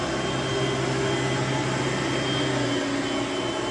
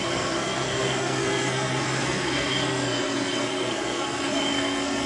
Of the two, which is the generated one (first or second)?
second